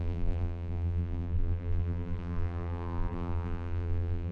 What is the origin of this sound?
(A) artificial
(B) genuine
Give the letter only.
A